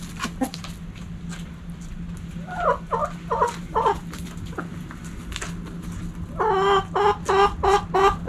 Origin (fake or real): real